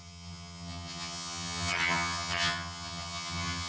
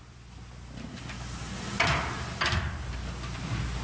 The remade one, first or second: first